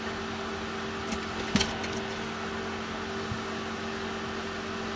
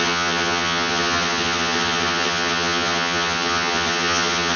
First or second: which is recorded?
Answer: first